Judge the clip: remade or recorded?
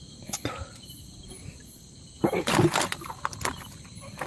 remade